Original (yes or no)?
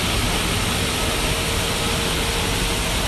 yes